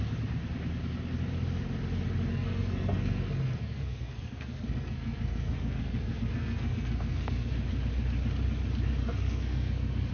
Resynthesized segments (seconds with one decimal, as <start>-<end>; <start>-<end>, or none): 2.3-7.5; 9.0-10.1